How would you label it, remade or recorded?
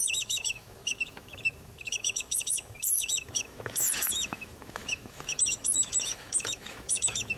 remade